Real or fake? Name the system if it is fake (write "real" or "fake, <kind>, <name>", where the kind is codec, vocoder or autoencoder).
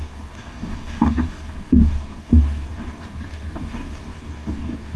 fake, codec, DAC